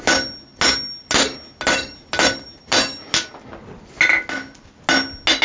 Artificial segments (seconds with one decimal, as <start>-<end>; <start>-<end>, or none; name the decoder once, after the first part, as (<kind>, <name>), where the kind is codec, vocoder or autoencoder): none